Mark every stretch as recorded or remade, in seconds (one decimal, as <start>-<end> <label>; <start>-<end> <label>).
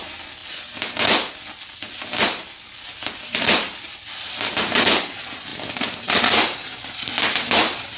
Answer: 0.0-3.0 recorded; 3.0-5.0 remade; 5.0-5.5 recorded; 5.5-6.9 remade; 6.9-8.0 recorded